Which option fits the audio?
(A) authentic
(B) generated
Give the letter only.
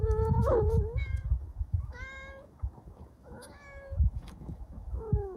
B